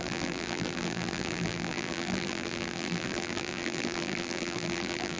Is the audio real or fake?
fake